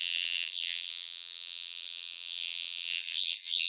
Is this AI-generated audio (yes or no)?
yes